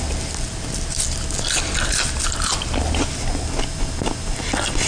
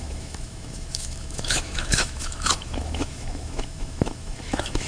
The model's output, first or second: second